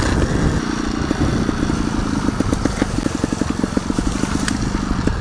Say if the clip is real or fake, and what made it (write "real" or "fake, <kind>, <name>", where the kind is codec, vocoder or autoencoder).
real